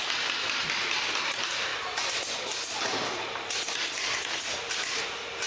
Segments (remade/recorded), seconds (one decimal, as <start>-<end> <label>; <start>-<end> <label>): 0.0-5.5 recorded